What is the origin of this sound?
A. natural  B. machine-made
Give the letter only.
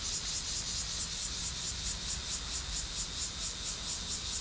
A